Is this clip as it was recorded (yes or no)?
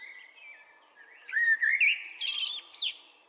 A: yes